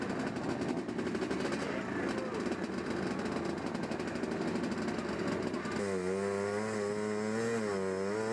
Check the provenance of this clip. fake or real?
real